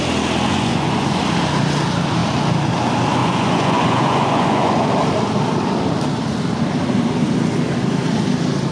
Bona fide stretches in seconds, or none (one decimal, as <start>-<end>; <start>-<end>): 0.0-0.5; 1.2-3.2; 4.9-8.7